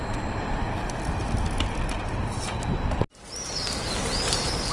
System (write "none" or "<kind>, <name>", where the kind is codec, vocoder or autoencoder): none